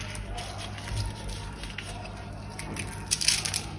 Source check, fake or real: real